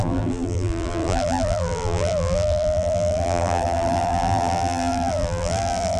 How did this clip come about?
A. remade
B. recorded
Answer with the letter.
A